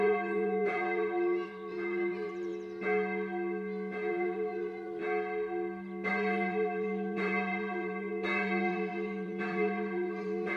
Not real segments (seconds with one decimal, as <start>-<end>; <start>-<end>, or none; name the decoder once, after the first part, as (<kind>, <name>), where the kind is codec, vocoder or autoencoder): 0.0-2.5 (vocoder, BigVGAN v2); 4.1-5.0; 6.1-10.6